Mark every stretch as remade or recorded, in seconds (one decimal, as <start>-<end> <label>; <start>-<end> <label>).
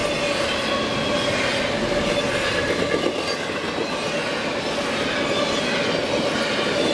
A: 0.0-6.9 recorded